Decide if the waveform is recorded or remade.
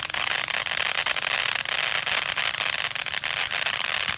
recorded